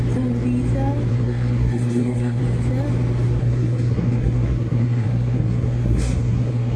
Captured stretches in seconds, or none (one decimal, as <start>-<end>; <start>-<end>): 0.0-1.1; 2.4-3.4

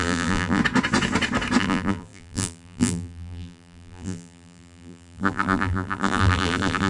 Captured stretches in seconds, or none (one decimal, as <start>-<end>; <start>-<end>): 0.6-1.6

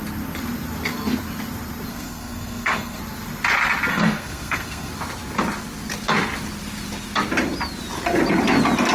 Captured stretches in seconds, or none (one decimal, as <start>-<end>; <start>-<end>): 0.0-1.9; 3.0-3.9; 4.9-8.9